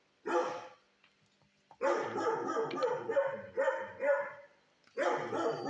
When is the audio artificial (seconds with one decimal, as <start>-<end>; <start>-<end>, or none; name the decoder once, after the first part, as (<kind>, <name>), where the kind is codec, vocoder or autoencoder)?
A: none